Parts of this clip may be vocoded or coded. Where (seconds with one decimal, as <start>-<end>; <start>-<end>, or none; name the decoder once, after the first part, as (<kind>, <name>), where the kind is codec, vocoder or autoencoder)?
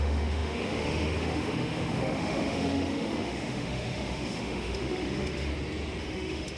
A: 0.0-5.5 (autoencoder, DAC-VAE); 6.0-6.6